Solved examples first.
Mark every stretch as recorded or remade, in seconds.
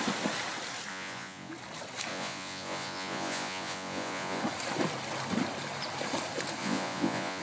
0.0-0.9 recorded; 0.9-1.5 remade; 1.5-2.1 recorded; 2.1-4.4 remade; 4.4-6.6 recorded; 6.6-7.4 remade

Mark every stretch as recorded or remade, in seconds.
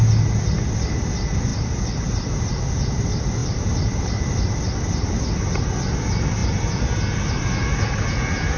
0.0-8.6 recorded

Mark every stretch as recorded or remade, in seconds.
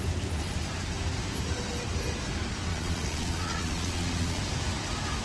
0.0-2.7 recorded; 2.7-4.4 remade; 4.4-5.2 recorded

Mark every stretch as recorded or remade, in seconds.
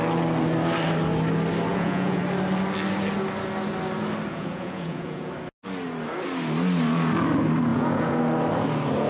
0.0-1.7 recorded; 1.7-2.2 remade; 2.2-4.3 recorded; 4.3-5.3 remade; 5.3-7.7 recorded; 7.7-8.2 remade; 8.2-9.1 recorded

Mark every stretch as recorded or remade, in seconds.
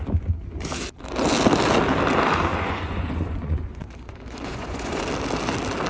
0.0-2.5 recorded; 2.5-5.0 remade; 5.0-5.9 recorded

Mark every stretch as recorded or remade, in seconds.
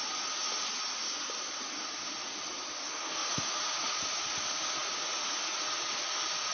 0.0-3.2 recorded; 3.2-4.2 remade; 4.2-4.8 recorded; 4.8-6.1 remade; 6.1-6.5 recorded